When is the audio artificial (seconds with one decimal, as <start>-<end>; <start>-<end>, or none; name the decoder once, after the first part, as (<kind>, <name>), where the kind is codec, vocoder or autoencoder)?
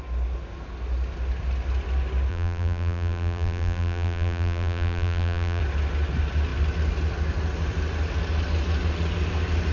2.3-5.6 (vocoder, BigVGAN v2)